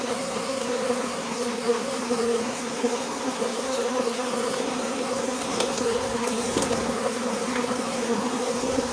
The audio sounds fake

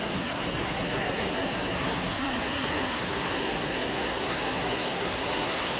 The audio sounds fake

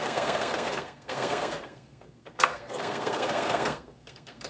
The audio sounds fake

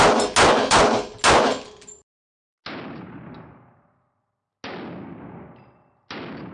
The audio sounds real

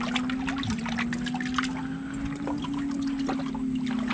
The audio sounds real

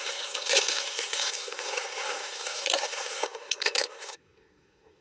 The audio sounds fake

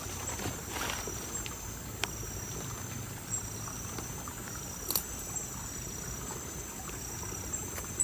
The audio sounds real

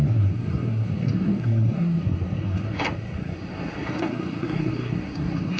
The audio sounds fake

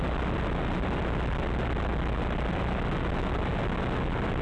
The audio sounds real